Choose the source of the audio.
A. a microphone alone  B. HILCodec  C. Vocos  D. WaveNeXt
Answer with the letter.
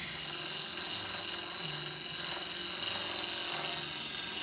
A